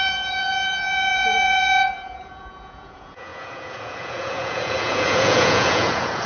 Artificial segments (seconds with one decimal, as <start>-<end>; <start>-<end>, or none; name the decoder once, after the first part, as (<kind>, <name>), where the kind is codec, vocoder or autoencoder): 0.0-6.3 (vocoder, Vocos)